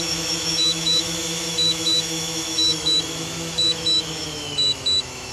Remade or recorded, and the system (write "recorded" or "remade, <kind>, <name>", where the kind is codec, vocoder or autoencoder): remade, autoencoder, DAC-VAE